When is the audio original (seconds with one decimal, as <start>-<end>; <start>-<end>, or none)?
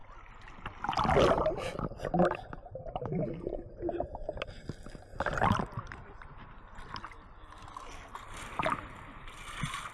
0.0-9.9